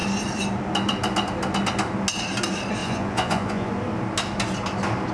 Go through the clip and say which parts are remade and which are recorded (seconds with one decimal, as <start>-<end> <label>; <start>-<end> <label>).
0.0-2.8 recorded; 2.8-3.7 remade; 3.7-5.1 recorded